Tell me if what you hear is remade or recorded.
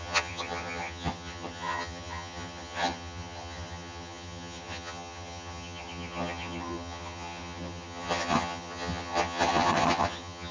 remade